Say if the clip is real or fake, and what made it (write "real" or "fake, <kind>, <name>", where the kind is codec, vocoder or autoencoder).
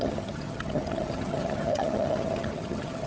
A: fake, vocoder, HiFi-GAN